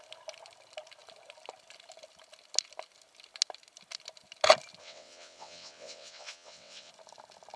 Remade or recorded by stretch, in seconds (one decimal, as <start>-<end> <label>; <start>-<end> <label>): 0.0-4.8 recorded; 4.8-6.9 remade; 6.9-7.6 recorded